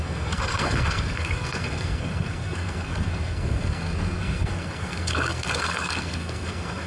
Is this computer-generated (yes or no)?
yes